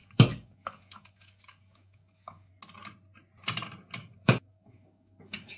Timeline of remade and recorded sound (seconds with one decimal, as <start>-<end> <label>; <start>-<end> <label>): 0.0-2.5 remade; 2.5-4.0 recorded; 4.0-5.6 remade